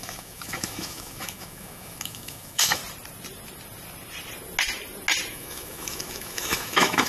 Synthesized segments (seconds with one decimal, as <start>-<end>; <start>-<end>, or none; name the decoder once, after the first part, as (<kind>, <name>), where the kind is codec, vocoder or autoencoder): 0.0-2.8 (autoencoder, DAC-VAE); 5.3-7.1